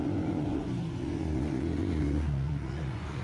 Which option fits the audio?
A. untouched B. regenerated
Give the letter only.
B